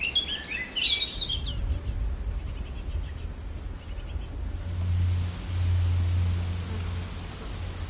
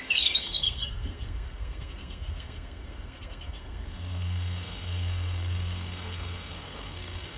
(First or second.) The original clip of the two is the first